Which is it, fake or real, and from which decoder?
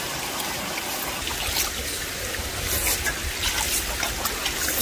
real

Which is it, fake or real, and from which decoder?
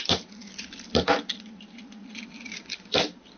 fake, vocoder, BigVGAN v2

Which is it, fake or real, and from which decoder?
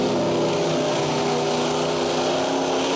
real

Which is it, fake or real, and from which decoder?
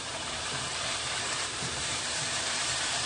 fake, vocoder, BigVGAN v2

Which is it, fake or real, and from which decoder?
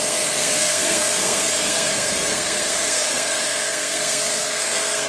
fake, codec, SNAC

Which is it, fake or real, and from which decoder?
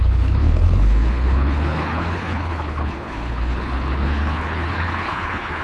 fake, codec, HILCodec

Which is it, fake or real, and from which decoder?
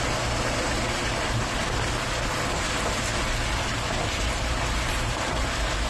real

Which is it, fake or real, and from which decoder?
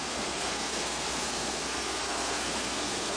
fake, codec, SNAC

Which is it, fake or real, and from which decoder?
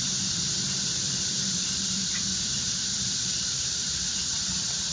fake, vocoder, BigVGAN v2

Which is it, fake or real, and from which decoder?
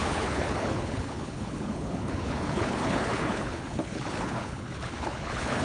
fake, codec, HILCodec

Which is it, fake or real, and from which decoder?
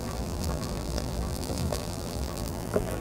fake, vocoder, BigVGAN v2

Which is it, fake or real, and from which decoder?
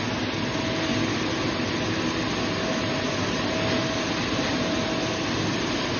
real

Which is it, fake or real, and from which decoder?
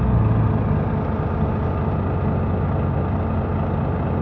real